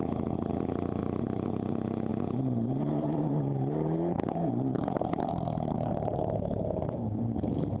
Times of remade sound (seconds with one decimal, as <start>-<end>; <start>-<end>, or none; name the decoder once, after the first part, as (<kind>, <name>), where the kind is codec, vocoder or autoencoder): 1.0-1.7 (vocoder, BigVGAN v2); 2.1-6.6